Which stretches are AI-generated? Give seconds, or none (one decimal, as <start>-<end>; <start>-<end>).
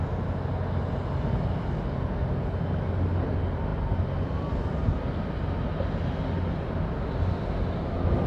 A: none